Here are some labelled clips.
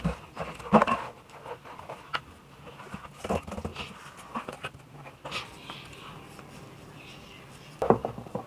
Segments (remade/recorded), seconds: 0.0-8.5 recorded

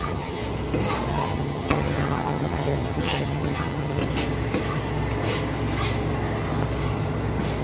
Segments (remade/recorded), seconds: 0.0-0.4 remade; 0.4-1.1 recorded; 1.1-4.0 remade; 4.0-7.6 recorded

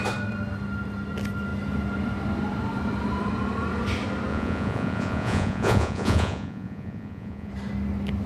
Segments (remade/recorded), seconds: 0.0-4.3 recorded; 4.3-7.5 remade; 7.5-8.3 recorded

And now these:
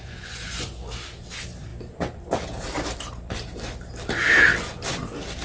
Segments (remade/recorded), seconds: 0.0-0.9 remade; 0.9-5.4 recorded

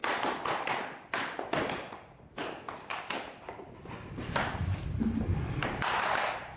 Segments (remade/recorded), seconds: 0.0-0.7 remade; 0.7-2.4 recorded; 2.4-5.1 remade; 5.1-6.6 recorded